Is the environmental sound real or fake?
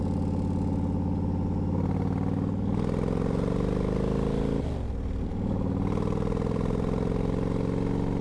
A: real